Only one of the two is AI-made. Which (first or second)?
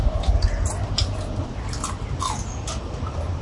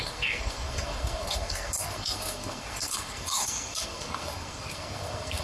second